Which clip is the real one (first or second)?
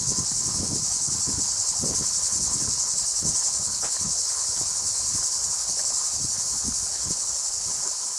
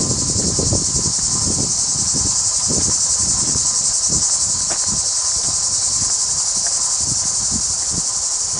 second